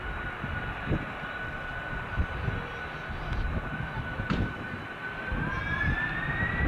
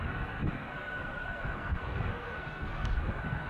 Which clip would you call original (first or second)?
first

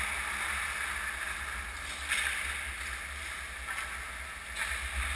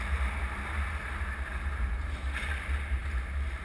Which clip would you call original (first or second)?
first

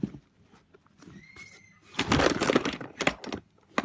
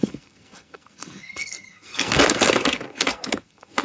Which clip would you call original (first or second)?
first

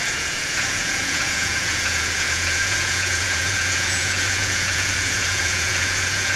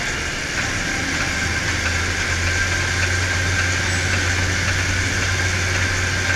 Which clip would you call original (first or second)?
second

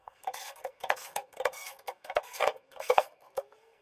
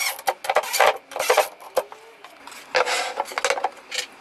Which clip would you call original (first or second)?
second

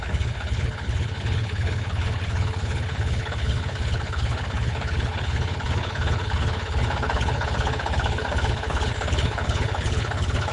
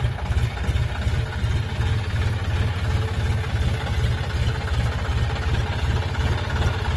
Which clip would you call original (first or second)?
second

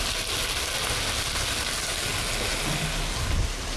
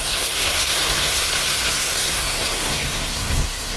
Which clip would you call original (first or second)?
first